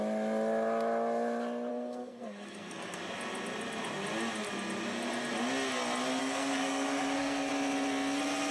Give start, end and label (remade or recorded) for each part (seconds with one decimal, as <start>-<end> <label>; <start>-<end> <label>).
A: 0.0-1.7 recorded; 1.7-3.0 remade; 3.0-6.2 recorded; 6.2-7.5 remade; 7.5-8.5 recorded